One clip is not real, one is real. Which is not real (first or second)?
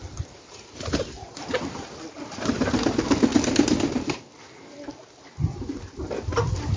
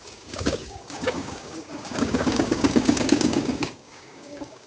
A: second